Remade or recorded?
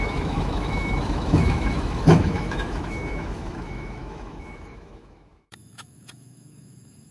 remade